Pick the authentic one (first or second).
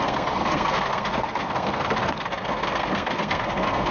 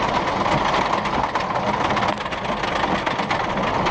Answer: second